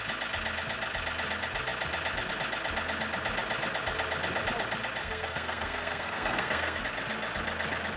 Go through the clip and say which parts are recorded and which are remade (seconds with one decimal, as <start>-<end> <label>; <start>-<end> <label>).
0.0-5.0 recorded; 5.0-6.8 remade; 6.8-8.0 recorded